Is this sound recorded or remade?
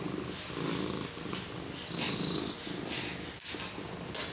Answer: recorded